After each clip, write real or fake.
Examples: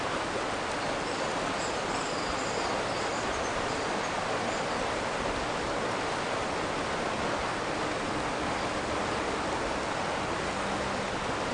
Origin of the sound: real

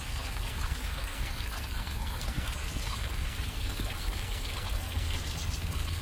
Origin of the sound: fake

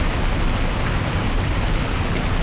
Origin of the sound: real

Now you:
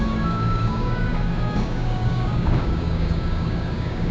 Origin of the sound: fake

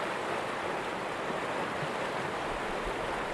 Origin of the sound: real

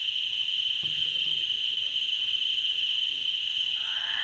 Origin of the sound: fake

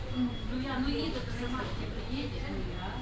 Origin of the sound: real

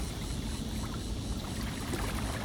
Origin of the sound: fake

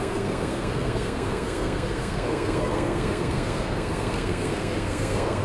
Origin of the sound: fake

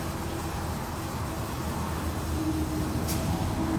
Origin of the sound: real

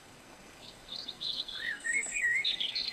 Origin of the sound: fake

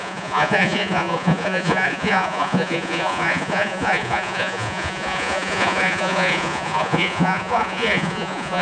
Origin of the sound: fake